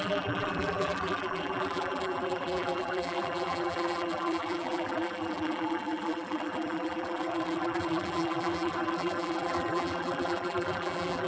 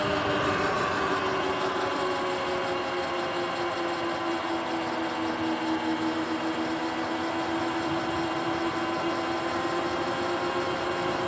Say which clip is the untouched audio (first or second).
second